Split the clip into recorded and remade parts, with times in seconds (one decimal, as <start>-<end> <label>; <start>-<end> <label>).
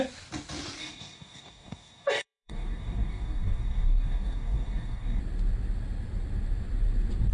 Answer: 0.0-0.8 recorded; 0.8-5.2 remade; 5.2-7.3 recorded